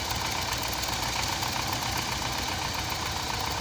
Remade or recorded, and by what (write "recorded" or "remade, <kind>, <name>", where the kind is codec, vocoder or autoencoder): recorded